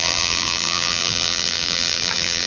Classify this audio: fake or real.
fake